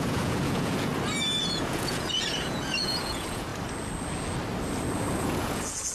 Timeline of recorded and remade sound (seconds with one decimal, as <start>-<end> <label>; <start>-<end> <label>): 0.0-0.9 remade; 0.9-1.4 recorded; 1.4-3.5 remade; 3.5-5.2 recorded; 5.2-5.9 remade